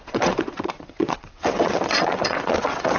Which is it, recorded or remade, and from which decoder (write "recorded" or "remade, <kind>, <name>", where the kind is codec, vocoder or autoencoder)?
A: remade, vocoder, WaveNeXt